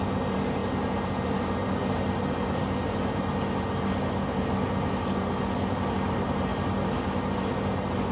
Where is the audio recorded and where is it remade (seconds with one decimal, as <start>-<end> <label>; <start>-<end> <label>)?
0.0-8.1 recorded